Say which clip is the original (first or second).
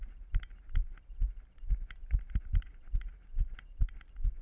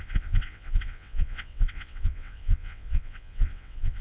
first